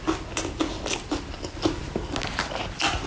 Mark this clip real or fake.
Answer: real